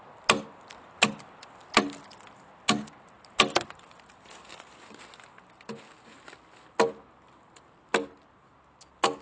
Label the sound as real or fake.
real